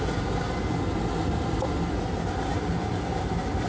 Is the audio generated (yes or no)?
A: no